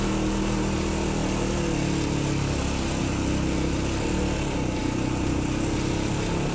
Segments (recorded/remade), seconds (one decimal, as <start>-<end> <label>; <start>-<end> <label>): 0.0-6.5 recorded